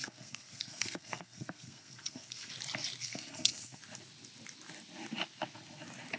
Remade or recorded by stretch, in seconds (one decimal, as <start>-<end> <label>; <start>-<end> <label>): 0.0-2.5 remade; 2.5-3.0 recorded; 3.0-3.8 remade; 3.8-6.2 recorded

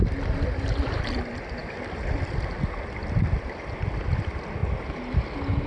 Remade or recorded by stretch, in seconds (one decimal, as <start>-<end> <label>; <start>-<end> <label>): 0.0-4.6 remade; 4.6-5.1 recorded; 5.1-5.7 remade

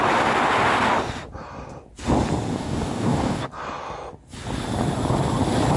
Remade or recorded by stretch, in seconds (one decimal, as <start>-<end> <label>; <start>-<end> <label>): 0.0-2.5 recorded; 2.5-3.4 remade; 3.4-5.8 recorded

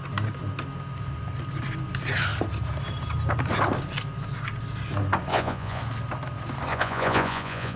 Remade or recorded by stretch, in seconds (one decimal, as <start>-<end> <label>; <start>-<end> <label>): 0.0-5.3 recorded; 5.3-5.8 remade; 5.8-6.7 recorded; 6.7-7.8 remade

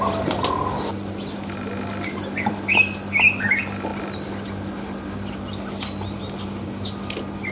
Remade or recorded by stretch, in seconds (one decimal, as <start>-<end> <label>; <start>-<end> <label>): 0.0-7.5 recorded

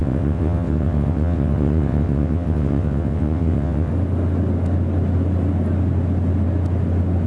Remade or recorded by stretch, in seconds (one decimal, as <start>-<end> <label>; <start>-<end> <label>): 0.0-3.9 remade; 3.9-7.3 recorded

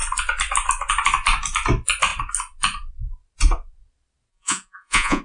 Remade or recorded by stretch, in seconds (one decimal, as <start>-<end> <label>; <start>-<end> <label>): 0.0-4.3 recorded; 4.3-5.2 remade

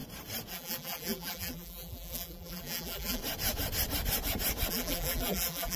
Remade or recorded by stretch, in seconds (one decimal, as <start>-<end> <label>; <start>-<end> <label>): 0.0-0.5 recorded; 0.5-3.2 remade; 3.2-4.7 recorded; 4.7-5.8 remade